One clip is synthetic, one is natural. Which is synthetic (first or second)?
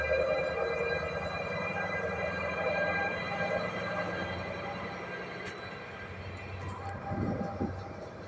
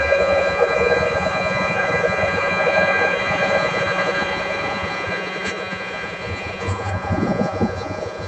second